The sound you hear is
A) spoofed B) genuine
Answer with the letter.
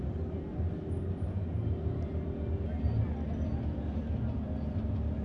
B